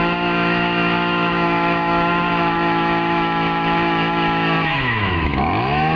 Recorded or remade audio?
remade